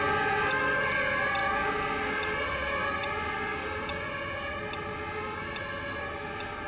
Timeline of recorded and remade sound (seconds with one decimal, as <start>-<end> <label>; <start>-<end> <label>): 0.0-6.7 recorded